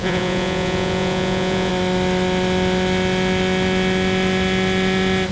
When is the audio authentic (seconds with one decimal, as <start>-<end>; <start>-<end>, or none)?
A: 1.7-5.3